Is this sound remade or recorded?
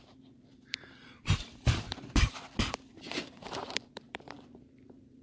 remade